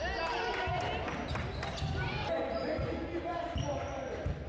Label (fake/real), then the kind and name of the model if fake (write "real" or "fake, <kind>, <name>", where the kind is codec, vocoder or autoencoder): real